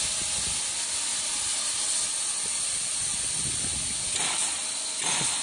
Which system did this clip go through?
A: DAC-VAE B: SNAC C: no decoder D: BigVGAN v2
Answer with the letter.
C